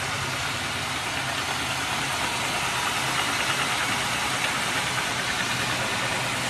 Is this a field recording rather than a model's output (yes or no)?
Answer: yes